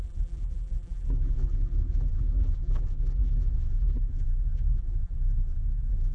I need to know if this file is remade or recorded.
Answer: remade